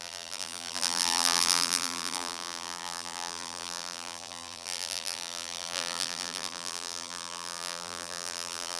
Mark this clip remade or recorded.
remade